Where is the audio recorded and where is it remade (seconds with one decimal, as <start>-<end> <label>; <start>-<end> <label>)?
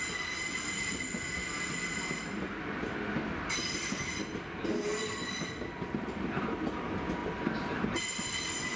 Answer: 0.0-4.9 recorded; 4.9-5.6 remade; 5.6-7.2 recorded; 7.2-7.8 remade; 7.8-8.8 recorded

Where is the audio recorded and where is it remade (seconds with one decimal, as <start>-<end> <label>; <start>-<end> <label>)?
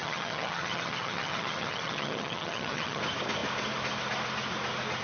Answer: 0.0-3.0 remade; 3.0-5.0 recorded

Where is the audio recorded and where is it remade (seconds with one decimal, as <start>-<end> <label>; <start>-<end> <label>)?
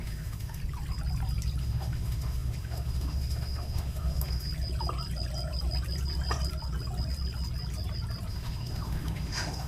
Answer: 0.0-0.6 remade; 0.6-1.6 recorded; 1.6-4.5 remade; 4.5-8.3 recorded; 8.3-9.7 remade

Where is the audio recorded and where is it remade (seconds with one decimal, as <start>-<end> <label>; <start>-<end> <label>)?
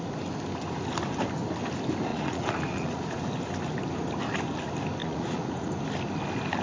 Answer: 0.0-2.1 recorded; 2.1-3.2 remade; 3.2-5.0 recorded; 5.0-5.7 remade; 5.7-6.6 recorded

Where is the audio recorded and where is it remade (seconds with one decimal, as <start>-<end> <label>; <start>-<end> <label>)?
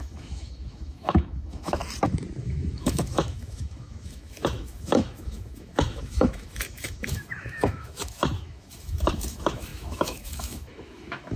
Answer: 0.0-1.8 remade; 1.8-2.4 recorded; 2.4-11.4 remade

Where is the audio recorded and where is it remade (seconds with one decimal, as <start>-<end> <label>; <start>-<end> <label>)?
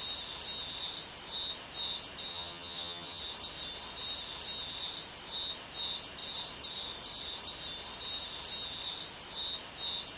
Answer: 0.0-2.3 recorded; 2.3-3.2 remade; 3.2-10.2 recorded